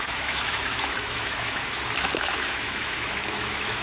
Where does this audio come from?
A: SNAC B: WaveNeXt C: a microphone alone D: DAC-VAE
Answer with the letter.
D